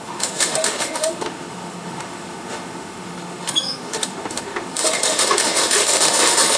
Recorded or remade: remade